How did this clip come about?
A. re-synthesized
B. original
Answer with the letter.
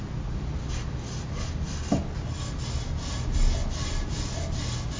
B